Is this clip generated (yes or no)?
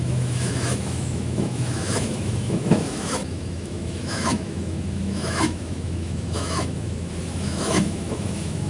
yes